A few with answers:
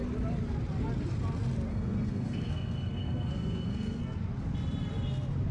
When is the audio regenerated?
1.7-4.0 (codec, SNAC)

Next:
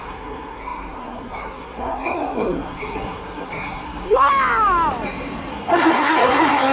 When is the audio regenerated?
0.0-4.3 (codec, SNAC); 5.5-6.7